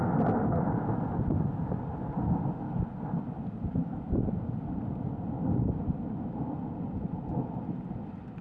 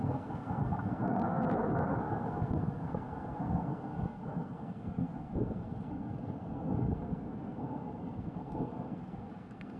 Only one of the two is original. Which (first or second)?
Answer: first